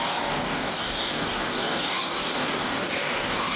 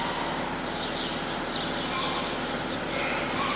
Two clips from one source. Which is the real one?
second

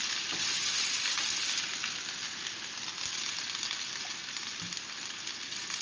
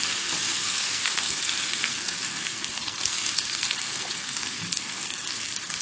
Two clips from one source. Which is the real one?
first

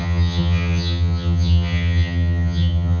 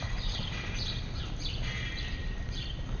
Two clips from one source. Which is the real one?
second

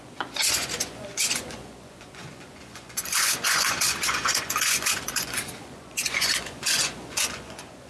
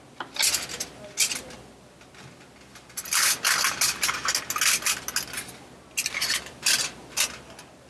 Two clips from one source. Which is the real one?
second